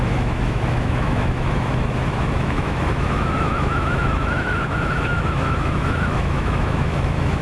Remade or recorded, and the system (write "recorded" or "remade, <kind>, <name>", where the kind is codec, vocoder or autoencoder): remade, autoencoder, DAC-VAE